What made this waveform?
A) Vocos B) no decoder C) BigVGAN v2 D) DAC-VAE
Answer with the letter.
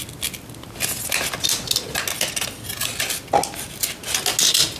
B